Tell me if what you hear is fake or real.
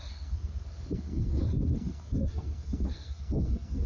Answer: fake